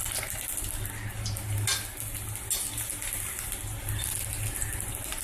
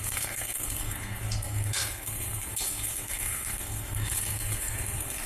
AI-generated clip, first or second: second